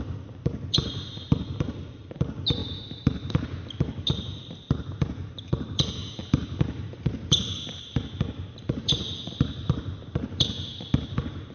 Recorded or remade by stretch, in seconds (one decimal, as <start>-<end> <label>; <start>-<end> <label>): 0.0-11.5 remade